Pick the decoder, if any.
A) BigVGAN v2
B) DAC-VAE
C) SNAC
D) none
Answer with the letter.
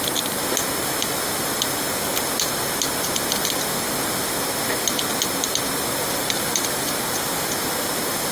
D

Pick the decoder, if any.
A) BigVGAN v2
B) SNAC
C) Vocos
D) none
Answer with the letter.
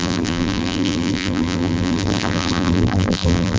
A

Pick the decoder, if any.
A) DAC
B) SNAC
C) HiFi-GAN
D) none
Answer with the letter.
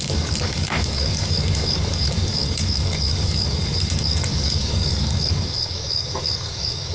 A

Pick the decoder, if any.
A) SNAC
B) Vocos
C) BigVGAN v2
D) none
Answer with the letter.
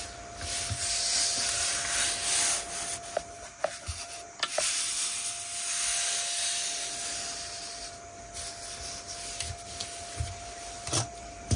D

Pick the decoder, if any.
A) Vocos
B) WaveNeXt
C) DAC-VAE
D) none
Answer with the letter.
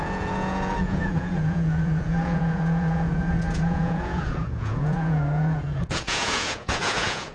A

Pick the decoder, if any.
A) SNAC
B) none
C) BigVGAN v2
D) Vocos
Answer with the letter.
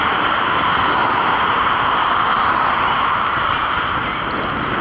B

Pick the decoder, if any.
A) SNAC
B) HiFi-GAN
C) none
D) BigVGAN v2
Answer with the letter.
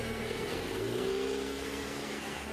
A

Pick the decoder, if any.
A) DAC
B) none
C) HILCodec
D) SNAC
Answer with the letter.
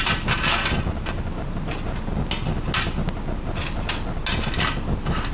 B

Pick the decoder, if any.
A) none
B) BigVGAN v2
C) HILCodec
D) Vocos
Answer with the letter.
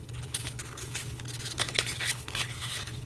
C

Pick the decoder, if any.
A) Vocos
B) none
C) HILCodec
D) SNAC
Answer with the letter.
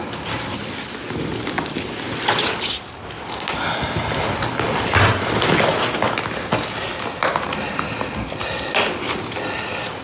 B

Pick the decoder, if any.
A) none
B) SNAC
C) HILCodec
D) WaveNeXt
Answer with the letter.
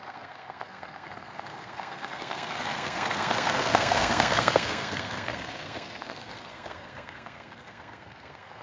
B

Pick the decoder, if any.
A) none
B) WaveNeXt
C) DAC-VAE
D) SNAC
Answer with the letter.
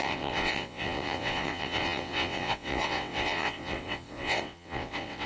B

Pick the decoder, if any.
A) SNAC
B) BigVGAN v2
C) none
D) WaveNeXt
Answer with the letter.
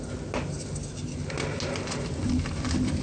C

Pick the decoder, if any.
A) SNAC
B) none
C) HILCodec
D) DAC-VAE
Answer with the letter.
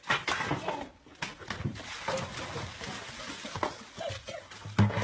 B